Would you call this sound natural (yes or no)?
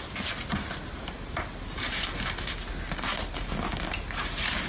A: yes